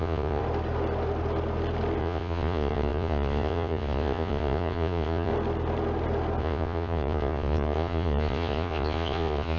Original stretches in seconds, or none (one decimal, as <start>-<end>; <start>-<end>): 0.4-2.0; 5.3-6.4